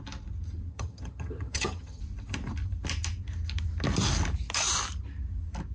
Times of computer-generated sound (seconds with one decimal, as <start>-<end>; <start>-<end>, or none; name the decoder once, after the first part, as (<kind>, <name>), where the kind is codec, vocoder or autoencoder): 0.7-2.0 (vocoder, HiFi-GAN)